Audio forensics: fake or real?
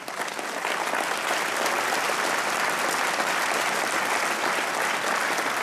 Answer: real